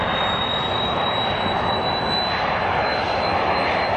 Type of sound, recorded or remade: recorded